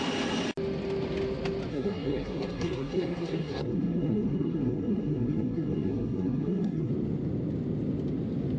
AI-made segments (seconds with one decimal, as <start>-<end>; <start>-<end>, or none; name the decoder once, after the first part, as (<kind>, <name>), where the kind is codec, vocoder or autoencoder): 1.7-6.9 (codec, SNAC)